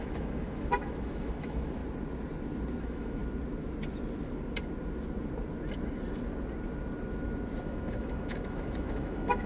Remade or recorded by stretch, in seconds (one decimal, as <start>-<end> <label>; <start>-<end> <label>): 0.0-1.8 remade; 1.8-2.8 recorded; 2.8-3.2 remade; 3.2-7.6 recorded; 7.6-9.5 remade